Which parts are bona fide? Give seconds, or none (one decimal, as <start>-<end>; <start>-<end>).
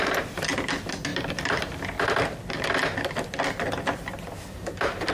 0.0-5.1